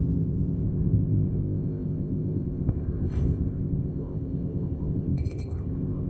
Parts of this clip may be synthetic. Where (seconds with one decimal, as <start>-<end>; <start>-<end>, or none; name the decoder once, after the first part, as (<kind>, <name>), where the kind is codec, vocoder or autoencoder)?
0.0-6.1 (codec, ZipCodec)

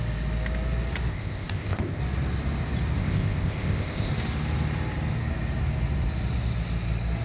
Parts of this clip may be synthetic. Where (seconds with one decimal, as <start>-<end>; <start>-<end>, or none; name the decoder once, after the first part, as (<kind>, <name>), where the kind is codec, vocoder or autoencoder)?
1.1-2.0 (codec, ZipCodec); 3.0-4.1

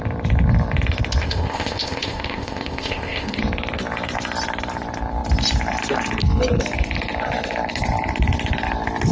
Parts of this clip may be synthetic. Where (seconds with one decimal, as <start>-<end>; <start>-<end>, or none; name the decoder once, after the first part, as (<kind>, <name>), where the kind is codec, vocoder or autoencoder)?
1.2-3.4 (codec, ZipCodec)

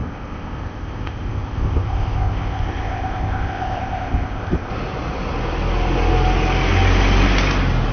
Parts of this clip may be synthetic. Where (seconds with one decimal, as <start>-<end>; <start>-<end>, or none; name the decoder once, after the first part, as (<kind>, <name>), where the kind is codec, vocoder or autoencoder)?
0.0-4.7 (codec, ZipCodec)

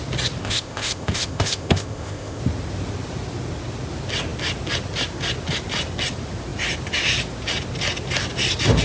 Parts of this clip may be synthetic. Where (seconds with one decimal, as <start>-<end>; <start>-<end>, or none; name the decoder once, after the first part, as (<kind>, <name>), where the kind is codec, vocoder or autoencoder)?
0.4-2.4 (codec, ZipCodec)

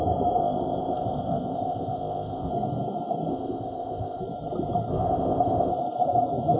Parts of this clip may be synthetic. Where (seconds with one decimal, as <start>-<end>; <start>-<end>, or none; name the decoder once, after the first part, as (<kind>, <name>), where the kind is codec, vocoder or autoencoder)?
0.4-2.5 (codec, ZipCodec); 3.3-4.2; 4.9-5.7